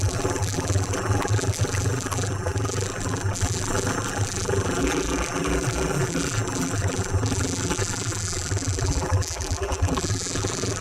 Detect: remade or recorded remade